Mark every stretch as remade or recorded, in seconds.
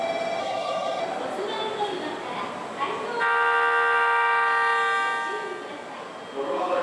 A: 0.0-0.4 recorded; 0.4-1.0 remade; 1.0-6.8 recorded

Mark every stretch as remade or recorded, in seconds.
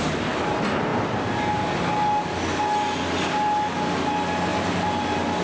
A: 0.0-5.4 recorded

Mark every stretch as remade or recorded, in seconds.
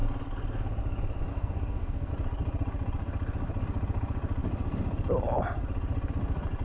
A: 0.0-1.3 recorded; 1.3-2.1 remade; 2.1-6.6 recorded